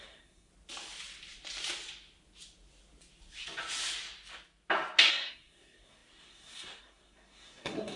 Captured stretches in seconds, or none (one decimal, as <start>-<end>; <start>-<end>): 0.5-5.1